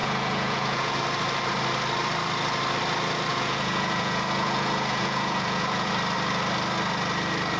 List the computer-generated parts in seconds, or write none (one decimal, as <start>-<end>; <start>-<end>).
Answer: 0.0-1.0; 3.3-5.9